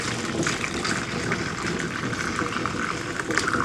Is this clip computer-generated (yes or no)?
yes